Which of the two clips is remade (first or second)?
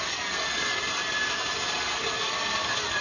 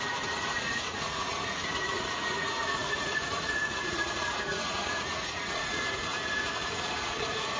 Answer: second